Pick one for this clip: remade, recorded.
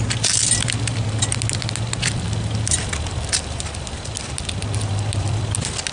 recorded